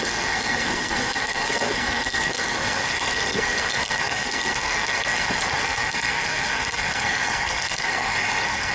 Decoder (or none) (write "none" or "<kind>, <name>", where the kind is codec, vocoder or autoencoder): codec, SNAC